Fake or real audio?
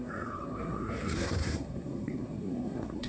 fake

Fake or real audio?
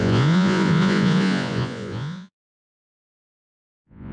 fake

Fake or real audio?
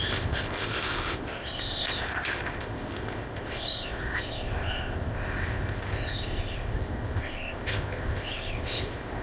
fake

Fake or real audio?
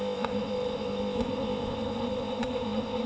fake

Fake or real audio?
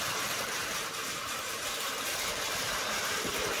fake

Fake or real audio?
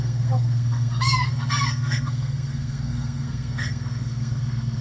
fake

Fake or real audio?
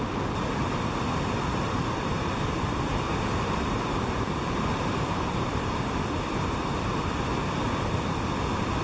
fake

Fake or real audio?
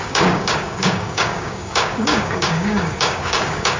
fake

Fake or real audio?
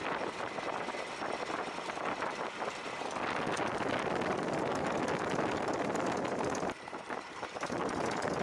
real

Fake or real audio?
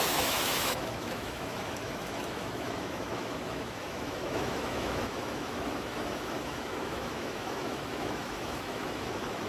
fake